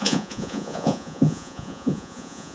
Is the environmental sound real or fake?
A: fake